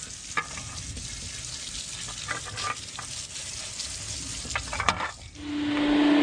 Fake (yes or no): no